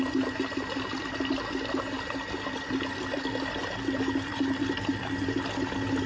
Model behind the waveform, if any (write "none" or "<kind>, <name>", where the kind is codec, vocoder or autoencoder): none